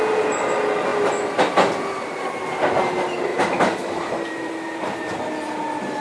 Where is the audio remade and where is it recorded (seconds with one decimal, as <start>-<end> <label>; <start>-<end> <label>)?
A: 0.0-3.3 recorded; 3.3-5.2 remade; 5.2-6.0 recorded